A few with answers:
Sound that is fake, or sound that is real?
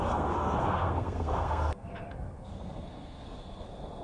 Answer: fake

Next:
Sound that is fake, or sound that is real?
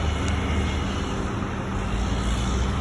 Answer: real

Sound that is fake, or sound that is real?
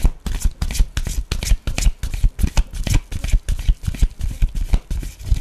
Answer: real